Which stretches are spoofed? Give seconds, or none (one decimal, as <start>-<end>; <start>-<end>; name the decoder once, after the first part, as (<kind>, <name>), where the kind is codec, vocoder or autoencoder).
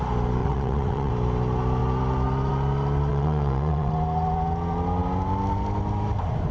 0.4-1.1 (vocoder, WaveNeXt); 3.1-3.9